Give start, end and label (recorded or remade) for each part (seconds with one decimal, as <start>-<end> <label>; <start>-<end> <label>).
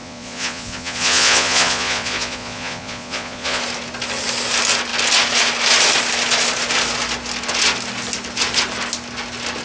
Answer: 0.0-3.6 remade; 3.6-9.6 recorded